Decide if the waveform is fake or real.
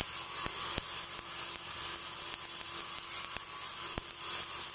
real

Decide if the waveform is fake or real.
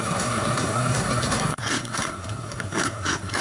fake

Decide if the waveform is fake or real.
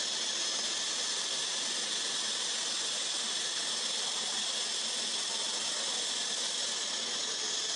real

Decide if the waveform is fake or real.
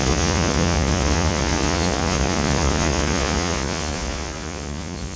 fake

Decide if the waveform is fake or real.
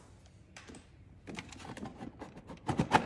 real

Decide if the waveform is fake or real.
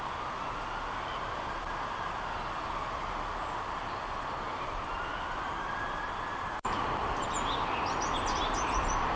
real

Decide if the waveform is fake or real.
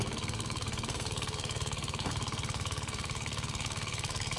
fake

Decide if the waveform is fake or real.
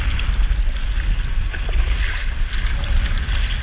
real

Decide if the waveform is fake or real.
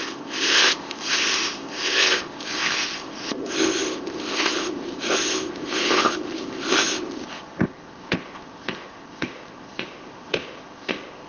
fake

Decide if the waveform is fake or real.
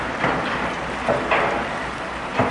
real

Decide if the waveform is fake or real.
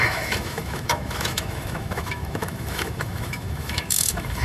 fake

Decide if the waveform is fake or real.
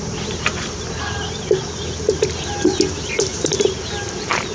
real